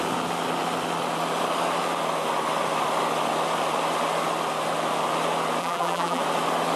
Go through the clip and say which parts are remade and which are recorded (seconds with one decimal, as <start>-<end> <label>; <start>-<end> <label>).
0.0-5.6 recorded; 5.6-6.2 remade; 6.2-6.8 recorded